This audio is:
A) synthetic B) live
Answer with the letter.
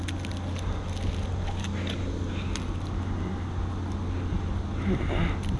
B